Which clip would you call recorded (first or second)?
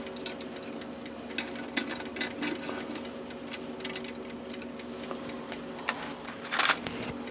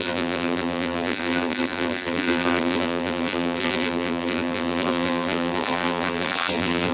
first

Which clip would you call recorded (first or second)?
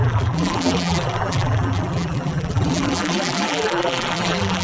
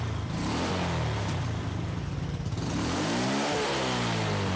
second